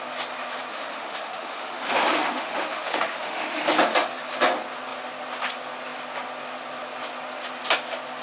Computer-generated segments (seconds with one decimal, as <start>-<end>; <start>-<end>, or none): 0.7-3.6